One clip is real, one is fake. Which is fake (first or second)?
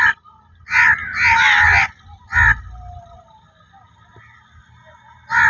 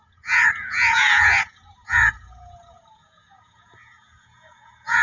second